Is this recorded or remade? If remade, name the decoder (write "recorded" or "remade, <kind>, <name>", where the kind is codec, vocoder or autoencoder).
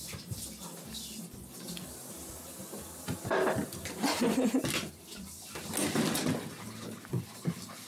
remade, vocoder, BigVGAN v2